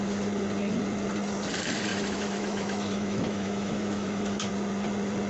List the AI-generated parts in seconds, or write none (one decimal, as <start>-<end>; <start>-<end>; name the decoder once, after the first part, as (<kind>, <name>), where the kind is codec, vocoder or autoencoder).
1.9-4.5 (autoencoder, DAC-VAE)